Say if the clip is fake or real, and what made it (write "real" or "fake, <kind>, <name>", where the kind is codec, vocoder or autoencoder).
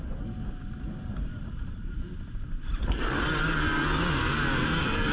real